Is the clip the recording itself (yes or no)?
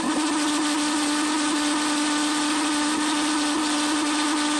yes